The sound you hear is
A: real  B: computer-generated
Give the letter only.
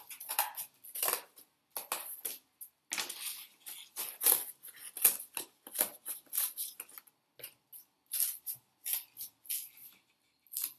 A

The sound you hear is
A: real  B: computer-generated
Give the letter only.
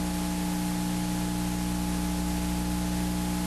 A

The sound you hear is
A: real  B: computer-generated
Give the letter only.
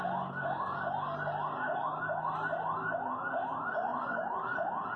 A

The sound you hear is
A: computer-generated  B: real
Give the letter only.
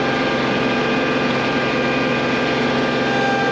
B